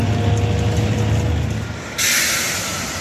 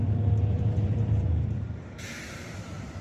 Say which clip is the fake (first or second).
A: second